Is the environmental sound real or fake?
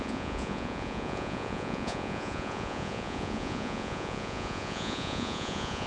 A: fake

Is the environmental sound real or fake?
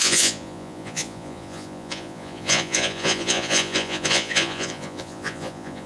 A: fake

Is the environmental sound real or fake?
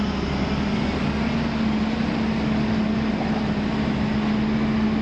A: real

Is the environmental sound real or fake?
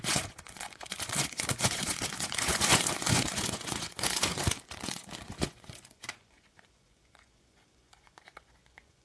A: fake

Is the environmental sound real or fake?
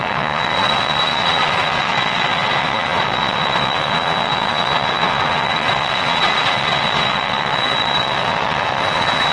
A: fake